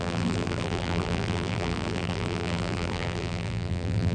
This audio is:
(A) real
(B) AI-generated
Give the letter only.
B